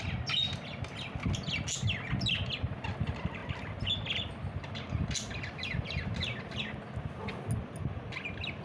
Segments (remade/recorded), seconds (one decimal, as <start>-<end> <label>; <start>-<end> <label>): 0.0-8.6 recorded